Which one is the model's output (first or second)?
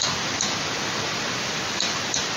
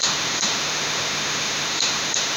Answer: second